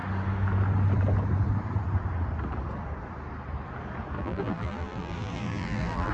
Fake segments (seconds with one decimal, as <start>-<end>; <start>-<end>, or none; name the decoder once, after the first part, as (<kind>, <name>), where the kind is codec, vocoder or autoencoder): 4.2-6.1 (vocoder, BigVGAN v2)